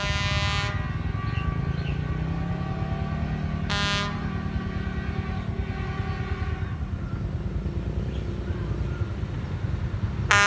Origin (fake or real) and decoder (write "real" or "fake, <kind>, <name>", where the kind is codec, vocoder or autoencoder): real